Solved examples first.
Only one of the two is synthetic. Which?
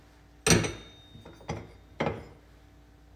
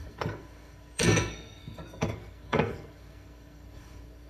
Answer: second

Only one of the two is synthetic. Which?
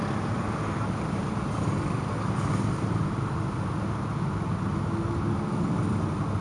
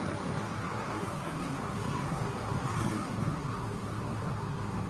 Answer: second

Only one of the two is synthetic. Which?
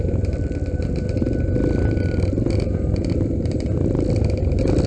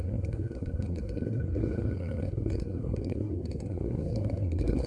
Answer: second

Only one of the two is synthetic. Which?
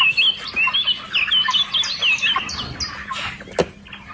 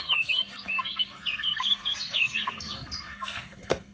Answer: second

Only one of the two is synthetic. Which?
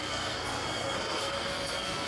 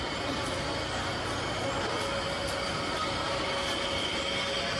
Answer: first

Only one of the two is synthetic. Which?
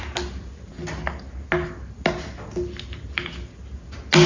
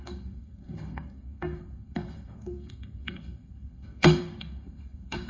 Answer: second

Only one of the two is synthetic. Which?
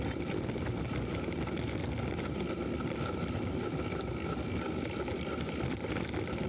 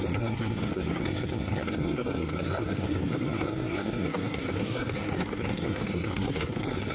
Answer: second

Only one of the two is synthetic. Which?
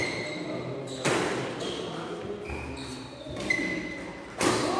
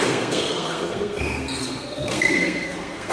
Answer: second